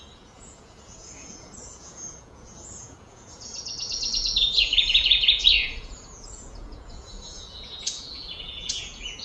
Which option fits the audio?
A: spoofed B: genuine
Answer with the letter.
A